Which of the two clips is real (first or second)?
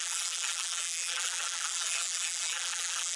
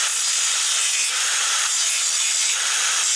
second